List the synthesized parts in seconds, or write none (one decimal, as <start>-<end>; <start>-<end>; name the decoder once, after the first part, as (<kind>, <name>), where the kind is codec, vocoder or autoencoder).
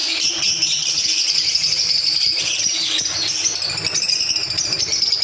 0.0-3.1 (vocoder, BigVGAN v2)